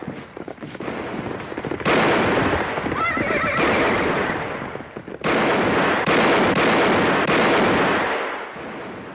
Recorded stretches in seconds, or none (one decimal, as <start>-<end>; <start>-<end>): 0.9-9.1